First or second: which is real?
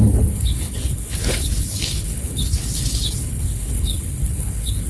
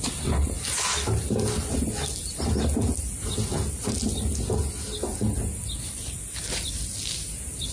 second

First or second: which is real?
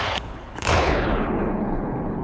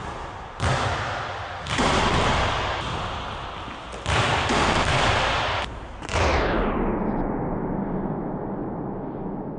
second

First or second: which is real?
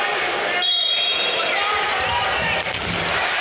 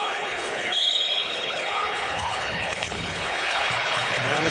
first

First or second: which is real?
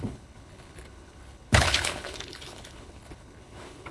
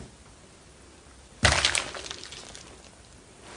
second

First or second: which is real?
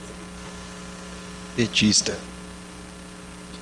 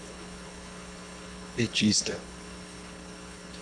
first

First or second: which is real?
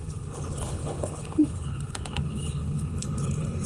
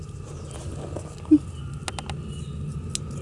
second